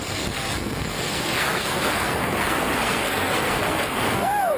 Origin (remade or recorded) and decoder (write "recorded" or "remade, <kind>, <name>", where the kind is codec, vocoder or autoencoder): remade, codec, SNAC